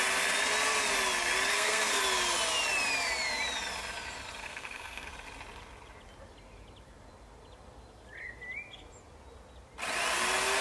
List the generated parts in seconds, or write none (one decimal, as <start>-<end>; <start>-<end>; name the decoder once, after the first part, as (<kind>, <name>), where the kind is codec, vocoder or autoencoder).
1.5-2.0 (codec, SNAC); 4.4-5.1